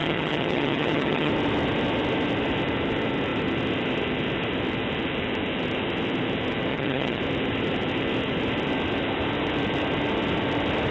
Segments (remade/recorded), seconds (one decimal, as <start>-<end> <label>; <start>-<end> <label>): 0.0-1.3 remade; 1.3-6.7 recorded; 6.7-7.2 remade; 7.2-10.9 recorded